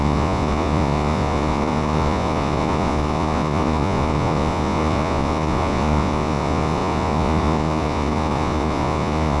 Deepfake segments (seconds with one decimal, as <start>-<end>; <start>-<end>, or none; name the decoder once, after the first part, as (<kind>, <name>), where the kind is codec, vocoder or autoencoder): 0.0-9.4 (vocoder, Vocos)

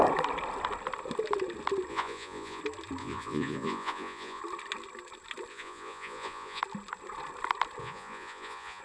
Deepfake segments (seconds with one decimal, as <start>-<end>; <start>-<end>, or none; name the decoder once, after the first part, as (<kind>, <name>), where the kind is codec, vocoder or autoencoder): 1.9-2.6 (vocoder, Vocos); 3.0-4.4; 5.5-6.6; 7.8-8.8

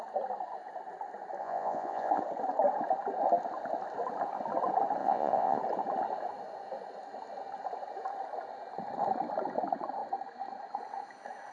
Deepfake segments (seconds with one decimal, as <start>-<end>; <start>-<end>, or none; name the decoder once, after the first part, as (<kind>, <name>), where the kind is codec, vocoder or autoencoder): 1.4-2.2 (vocoder, Vocos); 5.0-5.6

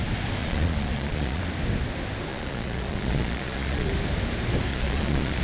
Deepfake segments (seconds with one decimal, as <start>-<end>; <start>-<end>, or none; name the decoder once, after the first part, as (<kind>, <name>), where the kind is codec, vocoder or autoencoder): 0.4-1.4 (vocoder, Vocos); 2.3-3.9; 4.7-5.4